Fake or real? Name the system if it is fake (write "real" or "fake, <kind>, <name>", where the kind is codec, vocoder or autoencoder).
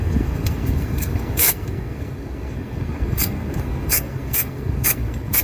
fake, codec, SNAC